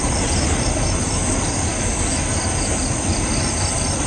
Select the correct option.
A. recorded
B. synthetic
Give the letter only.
A